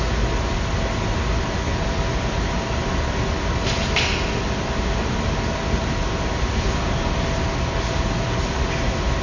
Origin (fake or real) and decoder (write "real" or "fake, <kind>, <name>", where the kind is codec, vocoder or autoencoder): real